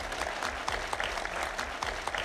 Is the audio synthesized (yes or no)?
no